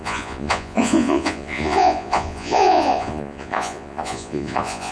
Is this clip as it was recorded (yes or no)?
no